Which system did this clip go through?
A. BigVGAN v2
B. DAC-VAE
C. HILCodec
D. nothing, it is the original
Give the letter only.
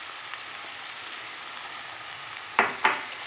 D